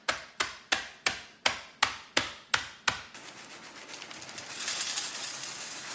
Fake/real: real